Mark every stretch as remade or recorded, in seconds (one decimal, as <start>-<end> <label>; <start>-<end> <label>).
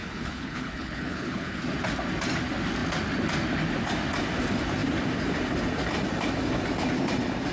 0.0-1.6 remade; 1.6-7.5 recorded